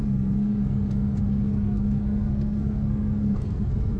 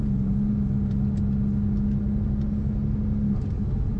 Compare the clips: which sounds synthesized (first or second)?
first